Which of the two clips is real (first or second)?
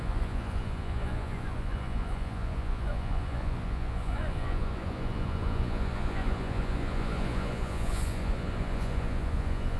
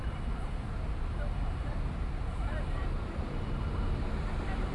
second